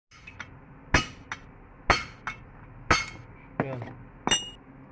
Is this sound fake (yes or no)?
no